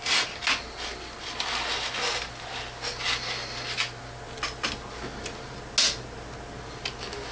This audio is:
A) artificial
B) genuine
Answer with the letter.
B